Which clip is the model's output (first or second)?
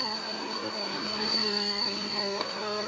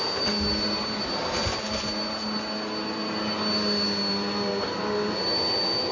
first